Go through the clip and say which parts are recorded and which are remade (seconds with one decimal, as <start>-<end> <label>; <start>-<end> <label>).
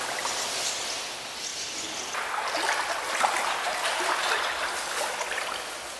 0.0-6.0 recorded